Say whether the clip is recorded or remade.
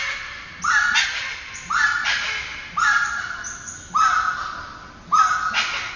recorded